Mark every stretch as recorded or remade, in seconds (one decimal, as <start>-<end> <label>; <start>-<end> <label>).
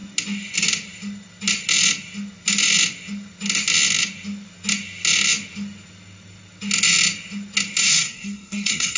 0.0-7.8 recorded; 7.8-9.0 remade